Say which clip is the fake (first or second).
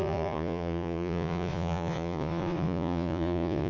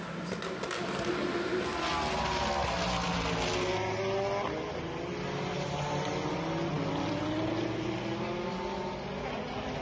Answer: first